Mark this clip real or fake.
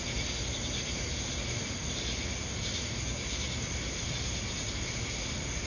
real